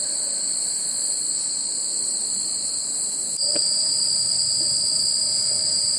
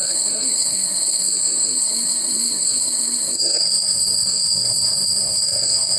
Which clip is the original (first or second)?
first